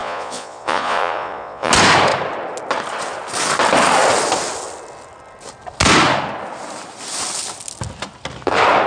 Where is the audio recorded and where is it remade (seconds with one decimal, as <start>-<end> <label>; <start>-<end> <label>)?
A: 0.0-1.7 remade; 1.7-8.9 recorded